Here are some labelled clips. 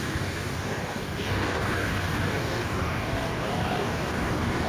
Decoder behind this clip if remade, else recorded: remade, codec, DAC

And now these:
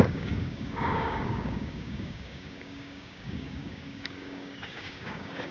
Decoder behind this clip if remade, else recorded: remade, codec, DAC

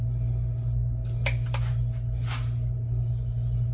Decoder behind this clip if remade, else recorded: recorded